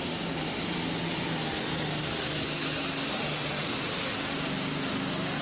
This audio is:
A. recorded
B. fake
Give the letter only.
A